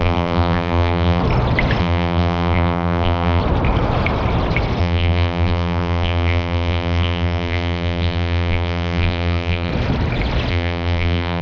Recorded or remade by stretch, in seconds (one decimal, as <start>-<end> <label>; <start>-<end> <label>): 0.0-1.2 remade; 1.2-1.8 recorded; 1.8-3.4 remade; 3.4-4.8 recorded; 4.8-9.7 remade; 9.7-10.5 recorded; 10.5-11.4 remade